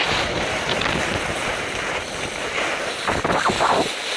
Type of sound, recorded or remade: recorded